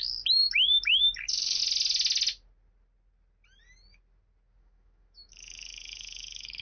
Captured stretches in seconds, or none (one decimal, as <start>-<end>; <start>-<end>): 1.6-4.6